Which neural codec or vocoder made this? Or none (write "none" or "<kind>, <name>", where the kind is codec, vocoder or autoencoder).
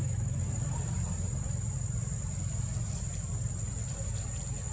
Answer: none